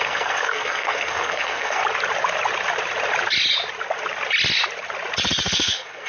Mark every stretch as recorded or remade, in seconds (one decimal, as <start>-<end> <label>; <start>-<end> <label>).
0.0-1.8 remade; 1.8-5.5 recorded; 5.5-6.1 remade